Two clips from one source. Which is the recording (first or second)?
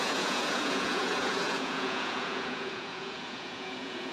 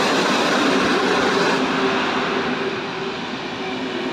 second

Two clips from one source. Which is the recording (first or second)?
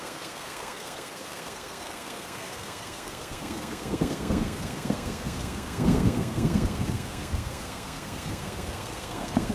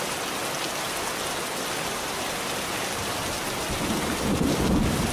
second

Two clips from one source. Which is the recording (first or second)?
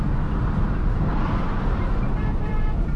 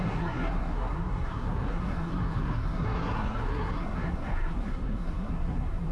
first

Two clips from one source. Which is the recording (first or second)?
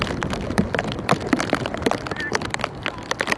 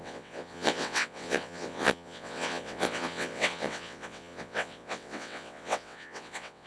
first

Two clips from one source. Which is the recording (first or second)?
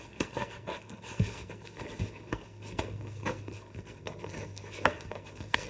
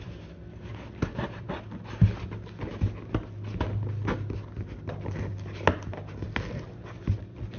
second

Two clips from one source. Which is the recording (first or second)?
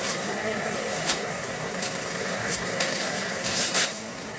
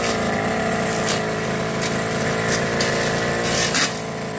second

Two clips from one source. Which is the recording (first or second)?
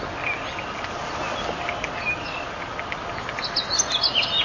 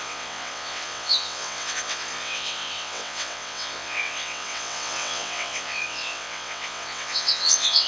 first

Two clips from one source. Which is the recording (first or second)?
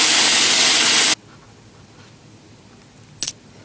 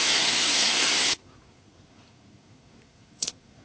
first